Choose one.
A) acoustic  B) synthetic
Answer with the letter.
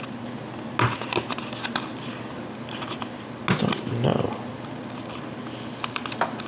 A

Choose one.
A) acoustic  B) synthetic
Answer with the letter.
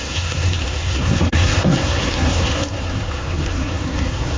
B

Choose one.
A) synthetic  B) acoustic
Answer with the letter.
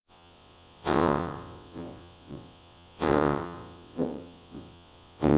A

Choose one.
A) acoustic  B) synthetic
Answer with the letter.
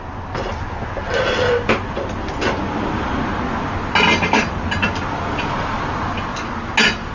A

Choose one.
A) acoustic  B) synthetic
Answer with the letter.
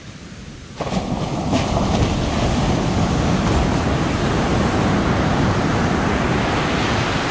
A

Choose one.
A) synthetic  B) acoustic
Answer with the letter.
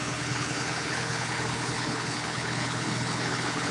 A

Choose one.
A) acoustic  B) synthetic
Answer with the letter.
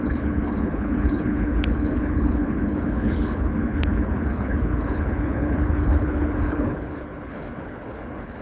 B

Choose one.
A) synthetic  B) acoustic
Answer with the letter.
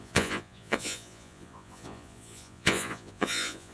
A